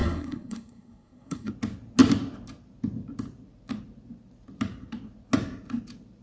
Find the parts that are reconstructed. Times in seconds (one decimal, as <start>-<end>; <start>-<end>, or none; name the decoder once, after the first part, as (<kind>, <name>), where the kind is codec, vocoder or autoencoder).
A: 0.0-1.5 (codec, SNAC)

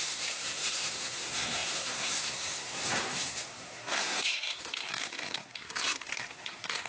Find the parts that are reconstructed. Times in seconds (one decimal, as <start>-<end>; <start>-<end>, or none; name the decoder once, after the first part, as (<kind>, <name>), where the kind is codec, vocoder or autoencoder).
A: 0.0-6.9 (codec, SNAC)

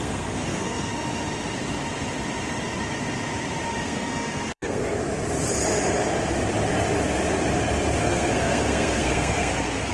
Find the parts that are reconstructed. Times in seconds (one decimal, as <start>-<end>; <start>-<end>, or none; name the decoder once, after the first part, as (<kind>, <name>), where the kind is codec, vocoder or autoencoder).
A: 0.0-0.9 (codec, SNAC); 3.8-4.8; 8.0-9.9